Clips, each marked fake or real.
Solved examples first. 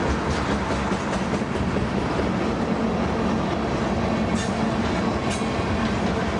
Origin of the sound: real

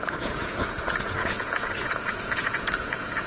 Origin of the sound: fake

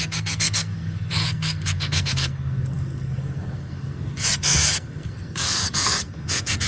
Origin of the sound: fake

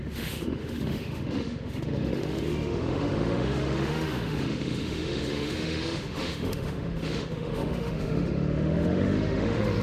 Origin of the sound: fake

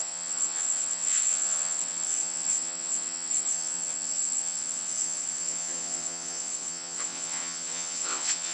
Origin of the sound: fake